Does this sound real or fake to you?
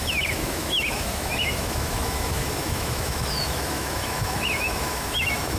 fake